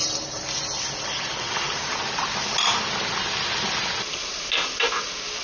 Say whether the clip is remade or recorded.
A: recorded